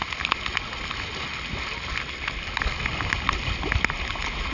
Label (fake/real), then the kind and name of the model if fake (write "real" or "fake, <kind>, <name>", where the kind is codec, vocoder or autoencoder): real